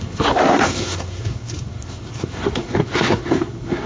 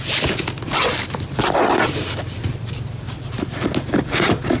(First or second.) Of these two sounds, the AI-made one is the first